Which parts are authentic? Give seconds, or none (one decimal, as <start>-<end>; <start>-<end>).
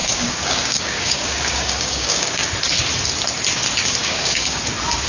2.5-4.0; 4.6-5.1